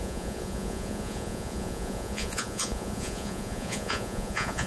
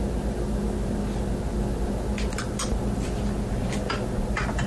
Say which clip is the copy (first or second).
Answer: first